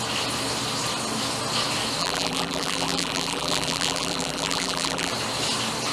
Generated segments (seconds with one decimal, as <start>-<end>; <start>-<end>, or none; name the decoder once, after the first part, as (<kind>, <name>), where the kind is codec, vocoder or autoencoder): 2.0-5.1 (vocoder, BigVGAN v2)